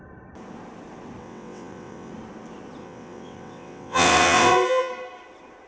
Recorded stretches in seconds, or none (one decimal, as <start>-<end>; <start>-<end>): 0.0-1.2; 2.1-2.8; 4.9-5.7